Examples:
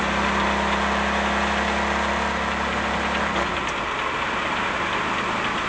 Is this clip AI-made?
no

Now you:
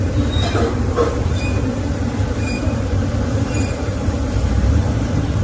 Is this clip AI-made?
yes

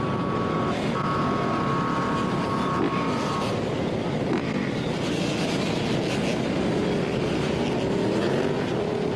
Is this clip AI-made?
no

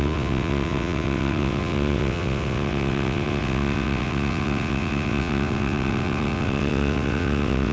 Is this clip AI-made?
yes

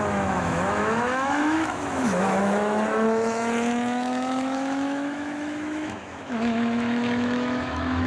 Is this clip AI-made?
yes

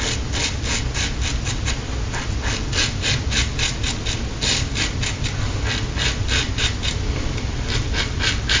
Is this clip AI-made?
no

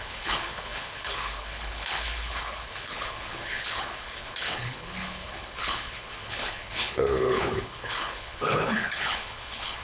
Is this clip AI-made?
yes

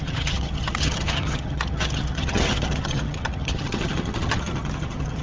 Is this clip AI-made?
yes